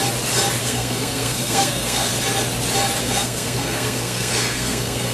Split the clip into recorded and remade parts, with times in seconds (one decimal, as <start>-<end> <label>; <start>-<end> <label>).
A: 0.0-0.6 recorded; 0.6-2.1 remade; 2.1-3.0 recorded; 3.0-5.1 remade